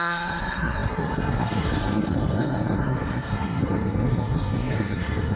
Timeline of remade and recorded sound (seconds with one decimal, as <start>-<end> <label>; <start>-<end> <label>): 0.0-5.4 remade